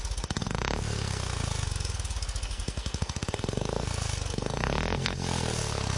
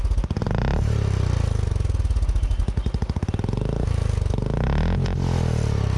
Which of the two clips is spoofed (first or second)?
first